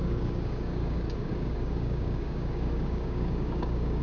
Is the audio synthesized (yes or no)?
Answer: yes